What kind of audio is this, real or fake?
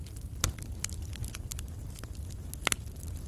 real